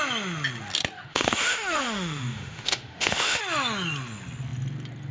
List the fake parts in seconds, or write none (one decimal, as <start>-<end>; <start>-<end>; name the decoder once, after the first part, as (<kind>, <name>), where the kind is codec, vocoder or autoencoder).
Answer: 1.1-3.4 (autoencoder, DAC-VAE)